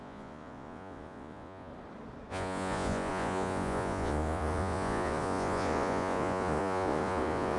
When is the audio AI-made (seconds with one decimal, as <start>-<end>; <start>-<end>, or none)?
0.0-1.7; 2.3-7.6

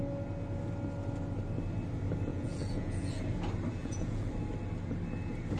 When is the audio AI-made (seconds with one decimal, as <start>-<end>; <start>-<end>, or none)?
2.3-3.2; 3.8-4.3

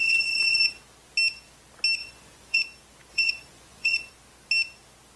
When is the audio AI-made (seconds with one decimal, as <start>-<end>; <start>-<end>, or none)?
0.0-0.8; 2.0-2.6; 3.1-4.1

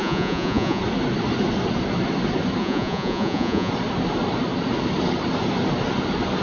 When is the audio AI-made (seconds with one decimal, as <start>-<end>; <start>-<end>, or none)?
0.0-0.8; 2.6-3.7

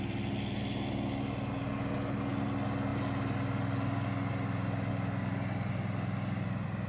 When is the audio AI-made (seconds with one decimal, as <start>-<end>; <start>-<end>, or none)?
none

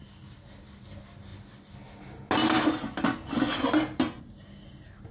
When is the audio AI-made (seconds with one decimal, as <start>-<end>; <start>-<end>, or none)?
none

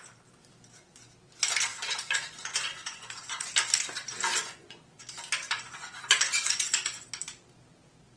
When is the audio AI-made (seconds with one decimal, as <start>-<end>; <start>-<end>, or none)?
1.7-3.5; 4.1-4.8; 5.4-7.1